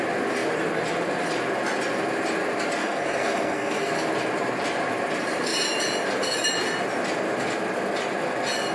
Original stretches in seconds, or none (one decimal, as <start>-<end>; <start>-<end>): 0.0-2.8; 3.9-8.7